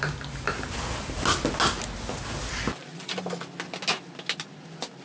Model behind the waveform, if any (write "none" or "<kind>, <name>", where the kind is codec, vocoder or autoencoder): none